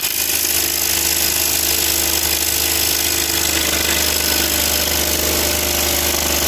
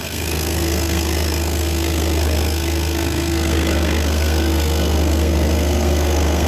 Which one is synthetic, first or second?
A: second